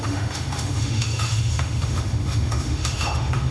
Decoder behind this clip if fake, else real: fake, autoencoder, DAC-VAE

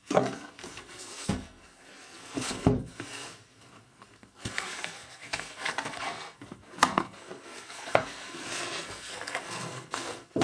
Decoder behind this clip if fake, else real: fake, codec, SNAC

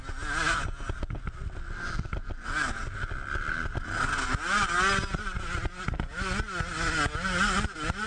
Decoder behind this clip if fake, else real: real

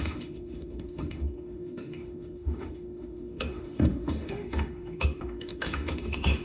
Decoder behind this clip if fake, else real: fake, autoencoder, DAC-VAE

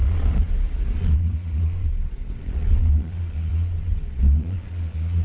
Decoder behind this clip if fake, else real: fake, vocoder, Vocos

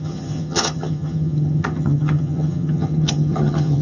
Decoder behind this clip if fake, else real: fake, vocoder, HiFi-GAN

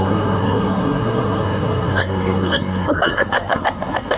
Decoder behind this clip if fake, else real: fake, codec, SNAC